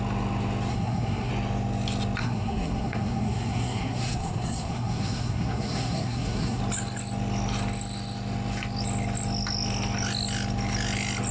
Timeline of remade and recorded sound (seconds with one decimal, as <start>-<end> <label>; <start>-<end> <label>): 0.0-0.7 recorded; 0.7-1.3 remade; 1.3-2.2 recorded; 2.2-6.6 remade; 6.6-11.3 recorded